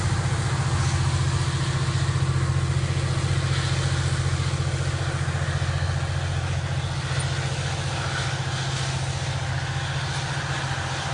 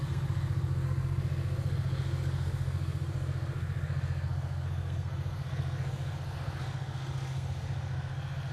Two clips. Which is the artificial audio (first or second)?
second